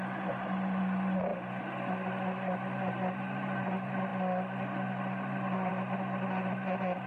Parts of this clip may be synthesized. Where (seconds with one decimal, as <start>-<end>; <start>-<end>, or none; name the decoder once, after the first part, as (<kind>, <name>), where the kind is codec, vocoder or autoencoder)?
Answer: none